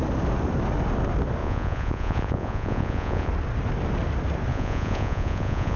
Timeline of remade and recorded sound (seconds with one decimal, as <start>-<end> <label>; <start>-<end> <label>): 0.0-1.4 recorded; 1.4-3.3 remade; 3.3-4.5 recorded; 4.5-5.8 remade